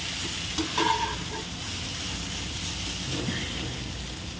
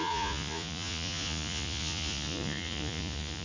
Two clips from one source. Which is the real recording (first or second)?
first